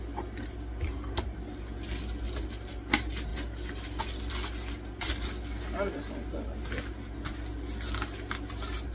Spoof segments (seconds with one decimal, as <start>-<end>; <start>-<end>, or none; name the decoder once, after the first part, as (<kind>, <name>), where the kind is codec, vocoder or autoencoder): none